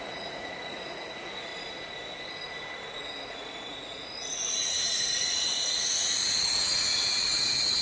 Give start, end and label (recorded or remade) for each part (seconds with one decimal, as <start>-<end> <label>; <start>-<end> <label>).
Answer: 0.0-1.5 remade; 1.5-3.3 recorded; 3.3-7.8 remade